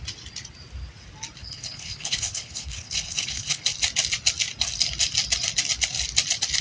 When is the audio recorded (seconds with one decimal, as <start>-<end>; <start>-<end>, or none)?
0.0-1.4; 3.6-6.6

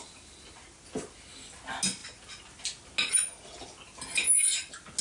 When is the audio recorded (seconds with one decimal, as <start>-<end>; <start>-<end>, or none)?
0.0-5.0

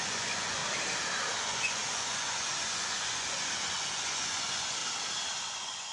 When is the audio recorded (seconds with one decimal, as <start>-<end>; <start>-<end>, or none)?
0.6-1.4; 4.8-5.5